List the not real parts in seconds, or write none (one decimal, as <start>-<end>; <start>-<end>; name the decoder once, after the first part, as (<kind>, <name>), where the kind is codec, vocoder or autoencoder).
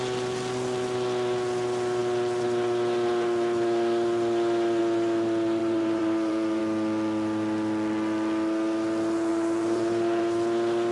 5.6-6.6 (vocoder, BigVGAN v2); 9.3-10.2